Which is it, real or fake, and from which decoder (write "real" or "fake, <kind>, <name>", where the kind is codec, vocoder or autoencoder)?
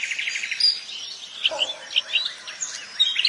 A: real